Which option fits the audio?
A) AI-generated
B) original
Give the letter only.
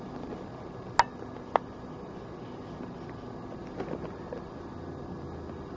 B